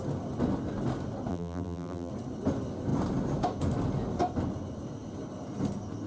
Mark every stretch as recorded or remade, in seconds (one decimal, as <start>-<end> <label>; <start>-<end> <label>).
0.0-1.3 recorded; 1.3-2.1 remade; 2.1-6.1 recorded